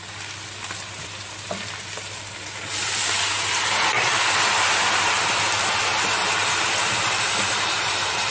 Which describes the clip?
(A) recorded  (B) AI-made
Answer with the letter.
A